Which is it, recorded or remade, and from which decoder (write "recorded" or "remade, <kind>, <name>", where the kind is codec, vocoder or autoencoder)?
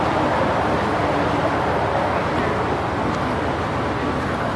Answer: recorded